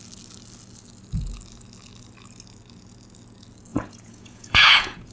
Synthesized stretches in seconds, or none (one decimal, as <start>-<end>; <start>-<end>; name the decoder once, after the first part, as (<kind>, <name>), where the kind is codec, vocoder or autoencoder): 3.7-5.1 (vocoder, Vocos)